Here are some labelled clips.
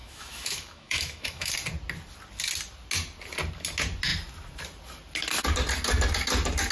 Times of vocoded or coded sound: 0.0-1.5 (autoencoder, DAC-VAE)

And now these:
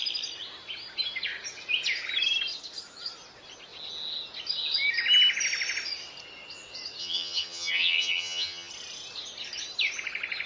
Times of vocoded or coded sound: 7.0-8.7 (vocoder, HiFi-GAN)

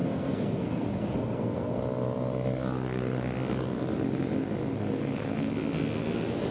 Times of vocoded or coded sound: 0.0-1.8 (codec, SNAC); 4.7-5.5

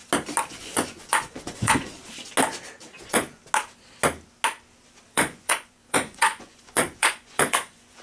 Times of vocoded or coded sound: 0.5-2.0 (vocoder, Vocos); 3.0-3.4; 5.1-8.0